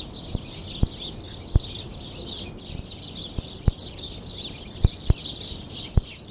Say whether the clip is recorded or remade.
recorded